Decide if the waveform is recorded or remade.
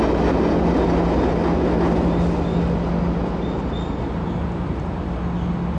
recorded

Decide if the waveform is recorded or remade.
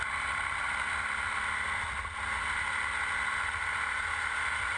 recorded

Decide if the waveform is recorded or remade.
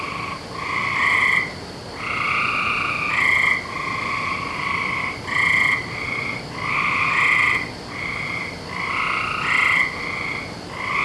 recorded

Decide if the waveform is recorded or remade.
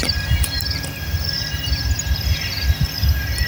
recorded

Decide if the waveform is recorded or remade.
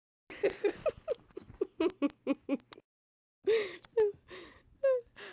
recorded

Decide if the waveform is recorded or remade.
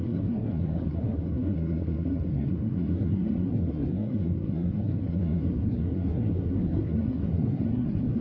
remade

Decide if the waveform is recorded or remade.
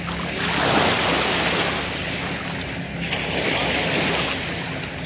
recorded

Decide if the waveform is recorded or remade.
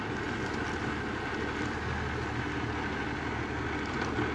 recorded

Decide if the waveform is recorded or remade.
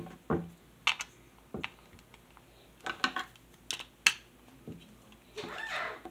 recorded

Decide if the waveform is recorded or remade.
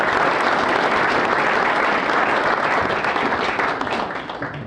recorded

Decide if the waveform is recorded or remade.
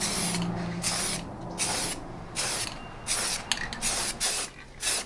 recorded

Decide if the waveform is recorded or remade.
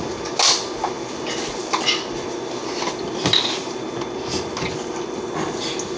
recorded